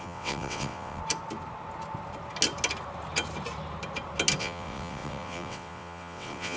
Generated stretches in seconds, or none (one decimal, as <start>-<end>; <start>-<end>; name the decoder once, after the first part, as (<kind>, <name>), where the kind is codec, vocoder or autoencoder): 0.0-1.0 (vocoder, WaveNeXt); 4.4-6.6